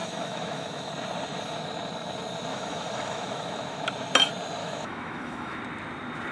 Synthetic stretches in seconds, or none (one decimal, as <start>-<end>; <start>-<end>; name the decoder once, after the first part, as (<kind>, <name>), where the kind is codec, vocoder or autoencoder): 0.0-0.9 (autoencoder, DAC-VAE); 2.5-3.8; 4.6-5.6